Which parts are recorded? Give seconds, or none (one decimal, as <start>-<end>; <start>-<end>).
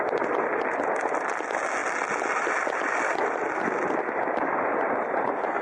0.0-5.6